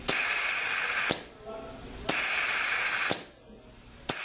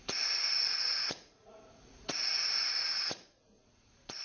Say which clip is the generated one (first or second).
second